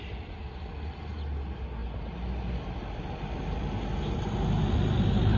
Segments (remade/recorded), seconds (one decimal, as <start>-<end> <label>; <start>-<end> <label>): 0.0-5.4 recorded